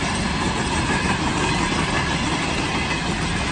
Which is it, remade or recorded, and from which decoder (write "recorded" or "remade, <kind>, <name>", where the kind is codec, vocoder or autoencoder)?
recorded